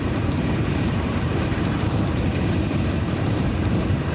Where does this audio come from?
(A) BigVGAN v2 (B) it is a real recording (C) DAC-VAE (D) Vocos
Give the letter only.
A